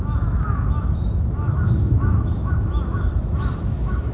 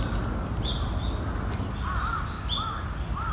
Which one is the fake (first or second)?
first